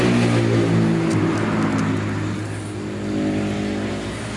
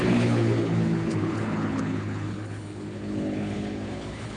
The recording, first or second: first